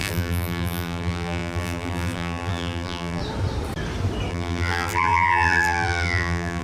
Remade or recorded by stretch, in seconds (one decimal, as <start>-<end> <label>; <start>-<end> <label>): 0.0-3.2 remade; 3.2-4.3 recorded; 4.3-6.6 remade